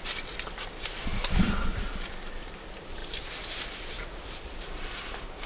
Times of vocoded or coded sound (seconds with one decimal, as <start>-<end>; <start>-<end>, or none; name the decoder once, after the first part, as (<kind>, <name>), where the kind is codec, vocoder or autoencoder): 0.0-5.5 (vocoder, BigVGAN v2)